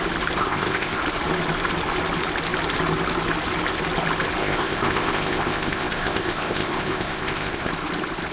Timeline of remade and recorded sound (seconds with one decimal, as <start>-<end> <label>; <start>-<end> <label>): 0.0-0.4 recorded; 0.4-1.0 remade; 1.0-4.4 recorded; 4.4-7.7 remade; 7.7-8.3 recorded